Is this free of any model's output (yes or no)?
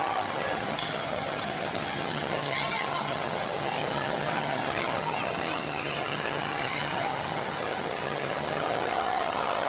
no